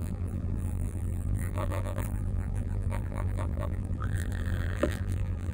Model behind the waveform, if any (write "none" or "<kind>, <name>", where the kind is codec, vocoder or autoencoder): vocoder, BigVGAN v2